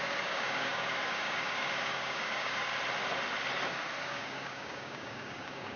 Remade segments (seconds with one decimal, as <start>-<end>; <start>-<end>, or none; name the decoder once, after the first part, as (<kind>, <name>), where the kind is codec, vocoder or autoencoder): 0.0-2.7 (codec, DAC); 4.0-5.8

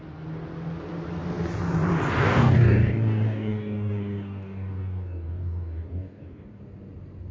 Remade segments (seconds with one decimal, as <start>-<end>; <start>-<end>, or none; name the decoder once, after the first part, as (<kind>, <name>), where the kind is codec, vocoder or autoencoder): 2.2-6.6 (codec, DAC)

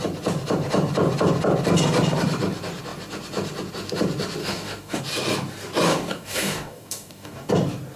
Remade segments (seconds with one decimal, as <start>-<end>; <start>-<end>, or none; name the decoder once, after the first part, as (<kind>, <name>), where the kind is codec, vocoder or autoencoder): 4.4-5.0 (codec, DAC); 5.9-7.5

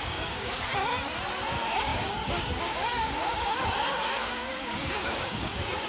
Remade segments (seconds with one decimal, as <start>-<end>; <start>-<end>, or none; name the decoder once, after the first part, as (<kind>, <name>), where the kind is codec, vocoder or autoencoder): 0.0-0.7 (codec, DAC); 1.5-5.9

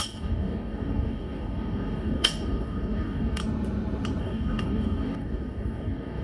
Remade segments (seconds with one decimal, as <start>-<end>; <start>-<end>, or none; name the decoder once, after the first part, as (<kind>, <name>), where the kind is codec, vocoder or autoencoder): 0.0-3.4 (codec, DAC); 4.2-6.2